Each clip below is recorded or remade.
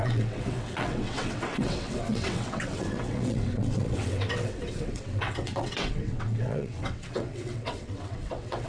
remade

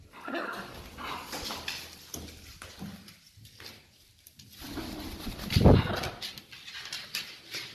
recorded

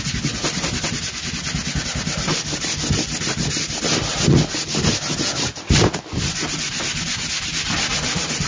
recorded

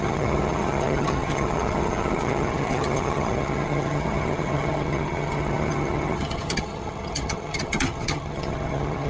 remade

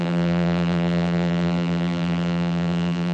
remade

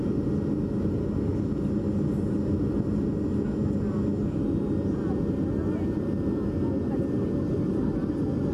recorded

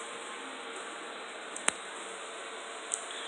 recorded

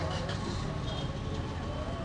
recorded